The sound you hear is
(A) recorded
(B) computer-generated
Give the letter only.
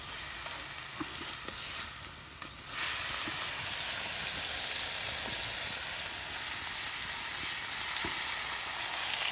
A